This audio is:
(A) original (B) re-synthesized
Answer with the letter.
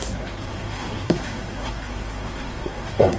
B